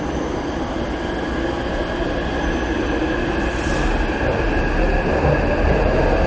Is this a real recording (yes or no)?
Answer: yes